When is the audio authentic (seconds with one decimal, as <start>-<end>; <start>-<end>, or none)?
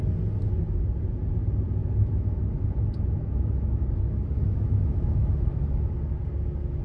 0.0-1.8; 5.9-6.8